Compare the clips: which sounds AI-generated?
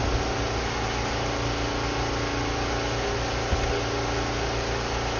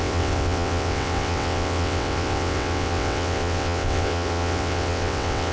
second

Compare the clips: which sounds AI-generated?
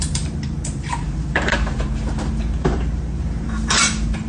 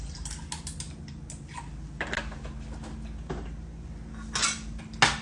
first